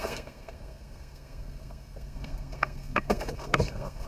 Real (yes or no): no